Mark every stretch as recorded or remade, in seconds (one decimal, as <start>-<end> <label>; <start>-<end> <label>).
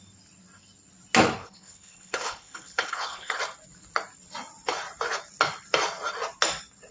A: 0.0-1.4 recorded; 1.4-3.4 remade; 3.4-6.9 recorded